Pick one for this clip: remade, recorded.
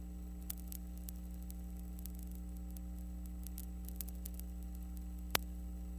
recorded